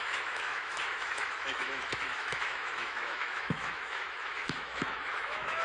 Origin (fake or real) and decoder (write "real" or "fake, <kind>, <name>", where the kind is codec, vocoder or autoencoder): fake, autoencoder, DAC-VAE